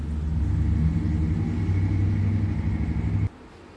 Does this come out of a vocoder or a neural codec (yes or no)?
no